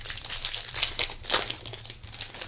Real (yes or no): yes